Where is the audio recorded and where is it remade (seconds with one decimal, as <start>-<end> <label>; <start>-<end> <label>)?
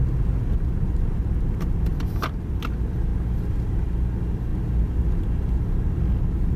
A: 0.0-6.6 recorded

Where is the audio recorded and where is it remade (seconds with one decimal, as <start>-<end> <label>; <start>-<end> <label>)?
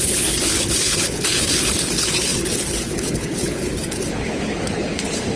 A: 0.0-5.4 remade